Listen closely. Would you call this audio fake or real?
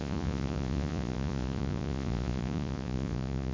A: fake